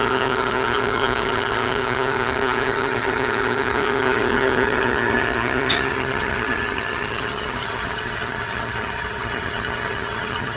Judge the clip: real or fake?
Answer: fake